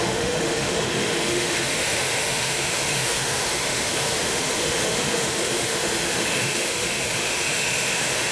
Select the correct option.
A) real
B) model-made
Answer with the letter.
B